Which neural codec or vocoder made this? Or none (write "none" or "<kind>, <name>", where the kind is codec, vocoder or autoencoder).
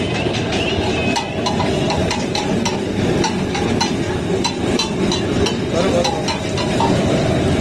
none